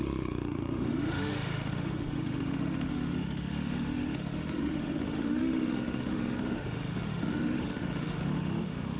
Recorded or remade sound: remade